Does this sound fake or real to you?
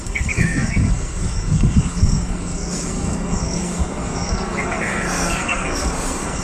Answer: fake